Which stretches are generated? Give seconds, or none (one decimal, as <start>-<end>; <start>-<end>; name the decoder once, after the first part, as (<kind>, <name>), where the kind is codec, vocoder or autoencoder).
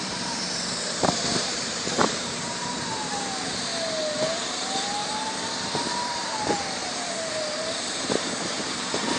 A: 0.0-3.7 (vocoder, BigVGAN v2); 4.3-5.0; 5.8-9.2